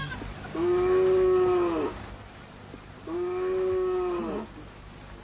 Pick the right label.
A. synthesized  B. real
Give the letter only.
B